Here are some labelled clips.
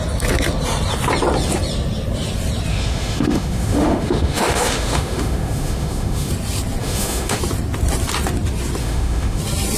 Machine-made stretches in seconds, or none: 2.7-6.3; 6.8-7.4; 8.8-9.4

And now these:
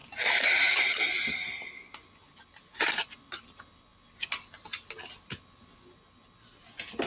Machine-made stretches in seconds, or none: none

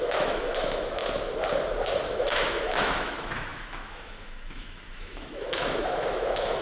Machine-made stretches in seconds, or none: 0.0-1.0; 2.1-6.6

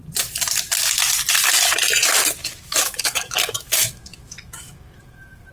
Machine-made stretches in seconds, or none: 2.4-5.5

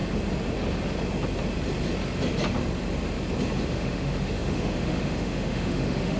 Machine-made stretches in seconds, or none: 3.7-6.2

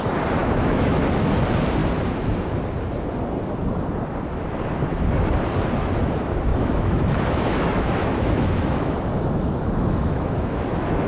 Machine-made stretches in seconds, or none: 0.4-1.2; 6.5-11.1

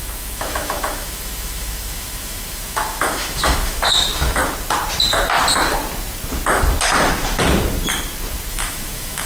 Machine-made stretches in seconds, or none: 0.0-4.4; 8.5-9.3

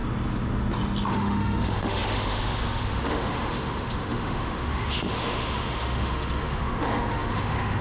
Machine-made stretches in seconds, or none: 1.1-7.8